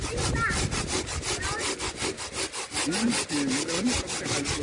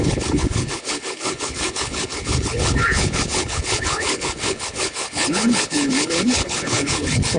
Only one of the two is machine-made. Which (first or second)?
second